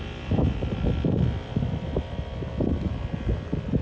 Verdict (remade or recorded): recorded